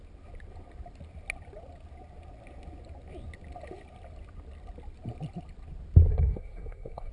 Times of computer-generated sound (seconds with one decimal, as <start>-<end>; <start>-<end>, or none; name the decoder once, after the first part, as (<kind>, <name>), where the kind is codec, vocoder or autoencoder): 6.1-7.1 (codec, SNAC)